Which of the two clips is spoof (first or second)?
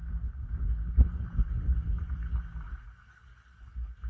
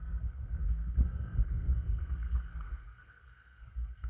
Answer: second